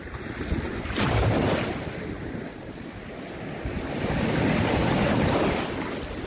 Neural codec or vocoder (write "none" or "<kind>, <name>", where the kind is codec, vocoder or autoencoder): none